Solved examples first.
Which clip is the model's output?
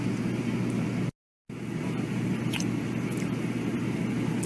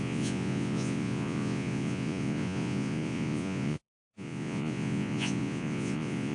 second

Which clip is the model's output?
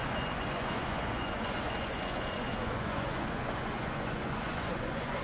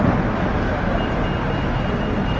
first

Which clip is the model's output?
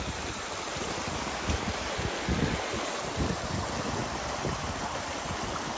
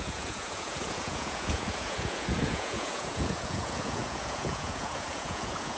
second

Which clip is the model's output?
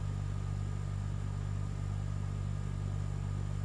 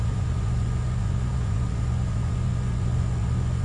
second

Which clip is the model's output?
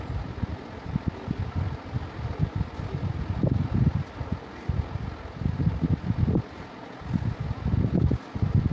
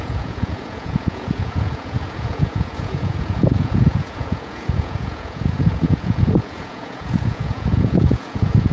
second